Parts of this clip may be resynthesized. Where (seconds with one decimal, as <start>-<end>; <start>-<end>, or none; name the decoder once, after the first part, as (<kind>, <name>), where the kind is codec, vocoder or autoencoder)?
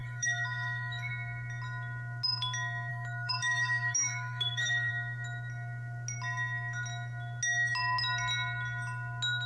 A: 0.0-1.1 (autoencoder, DAC-VAE); 2.9-4.9